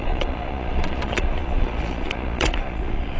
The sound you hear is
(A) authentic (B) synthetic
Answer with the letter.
B